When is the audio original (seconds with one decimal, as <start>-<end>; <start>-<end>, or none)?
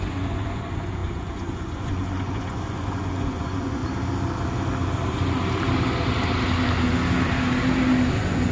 3.8-8.1